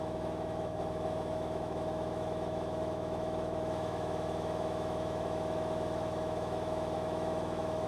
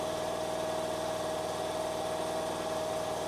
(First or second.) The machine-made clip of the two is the first